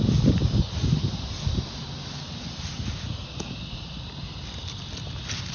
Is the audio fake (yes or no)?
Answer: no